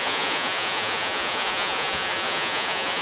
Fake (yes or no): yes